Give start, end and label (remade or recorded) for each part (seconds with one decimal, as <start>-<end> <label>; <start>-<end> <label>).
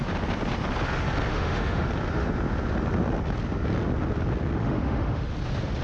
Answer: 0.0-1.3 recorded; 1.3-1.9 remade; 1.9-4.6 recorded; 4.6-5.3 remade; 5.3-5.8 recorded